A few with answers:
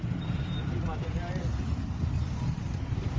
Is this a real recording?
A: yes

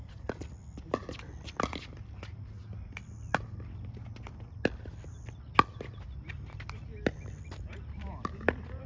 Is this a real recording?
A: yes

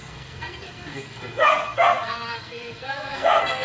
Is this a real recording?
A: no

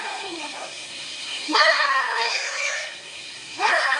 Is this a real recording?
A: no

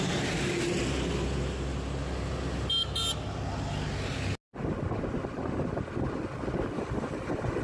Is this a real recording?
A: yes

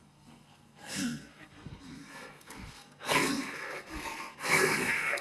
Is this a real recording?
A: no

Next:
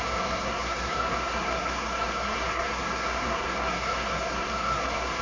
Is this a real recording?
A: no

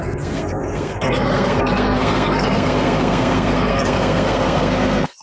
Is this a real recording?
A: no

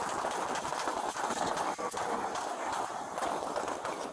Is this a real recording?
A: yes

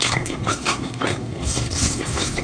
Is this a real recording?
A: no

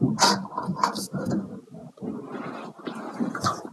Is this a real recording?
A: yes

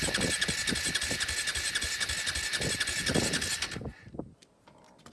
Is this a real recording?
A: yes